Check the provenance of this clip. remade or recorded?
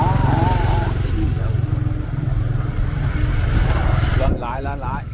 recorded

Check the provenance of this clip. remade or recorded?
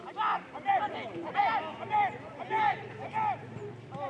remade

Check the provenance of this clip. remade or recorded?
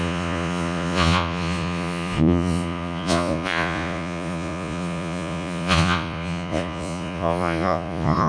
remade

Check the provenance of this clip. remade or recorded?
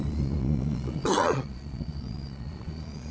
remade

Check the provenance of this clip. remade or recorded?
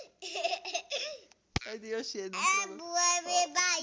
recorded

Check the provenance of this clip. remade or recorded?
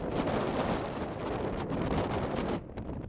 recorded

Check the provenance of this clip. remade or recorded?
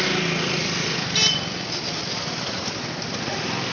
recorded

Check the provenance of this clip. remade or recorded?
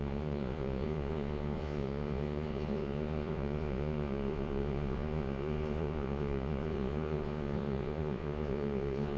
remade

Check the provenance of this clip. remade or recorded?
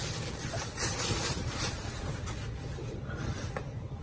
recorded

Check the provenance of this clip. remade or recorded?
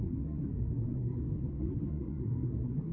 remade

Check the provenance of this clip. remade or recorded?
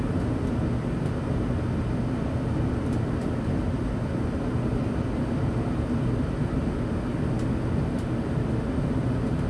recorded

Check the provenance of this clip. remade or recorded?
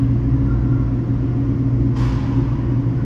recorded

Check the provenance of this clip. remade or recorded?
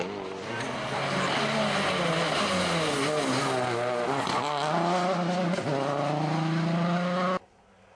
recorded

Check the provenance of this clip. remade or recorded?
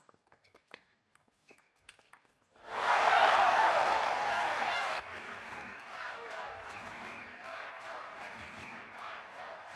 remade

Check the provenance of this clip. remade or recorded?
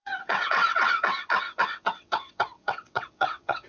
remade